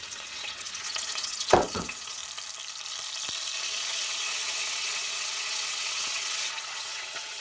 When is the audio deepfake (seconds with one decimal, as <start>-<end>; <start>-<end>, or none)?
0.0-2.2; 3.6-7.4